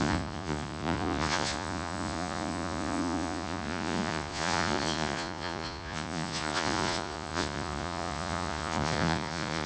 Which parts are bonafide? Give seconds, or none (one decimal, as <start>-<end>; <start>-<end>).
none